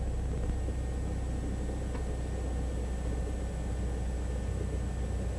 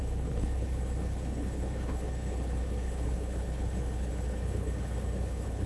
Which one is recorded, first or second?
first